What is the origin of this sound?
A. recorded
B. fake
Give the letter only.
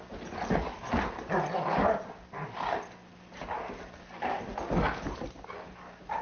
A